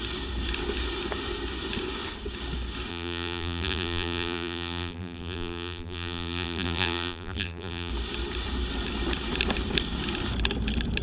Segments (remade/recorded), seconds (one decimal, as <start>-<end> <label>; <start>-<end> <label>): 0.0-2.9 recorded; 2.9-7.9 remade; 7.9-11.0 recorded